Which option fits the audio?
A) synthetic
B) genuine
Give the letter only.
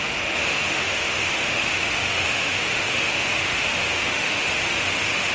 A